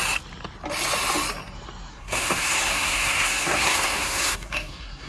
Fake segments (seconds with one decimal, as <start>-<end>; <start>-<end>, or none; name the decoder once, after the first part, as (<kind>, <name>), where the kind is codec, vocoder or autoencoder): 1.9-5.1 (codec, SNAC)